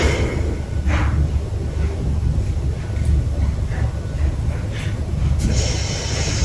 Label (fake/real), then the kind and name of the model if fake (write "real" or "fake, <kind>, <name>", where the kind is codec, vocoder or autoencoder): real